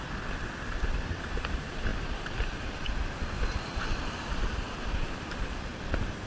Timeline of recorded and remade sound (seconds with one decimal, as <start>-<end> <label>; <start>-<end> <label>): 0.0-1.9 recorded; 1.9-5.4 remade; 5.4-6.3 recorded